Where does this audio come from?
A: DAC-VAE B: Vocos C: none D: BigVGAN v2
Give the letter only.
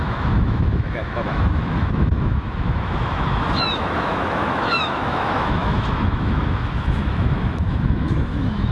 A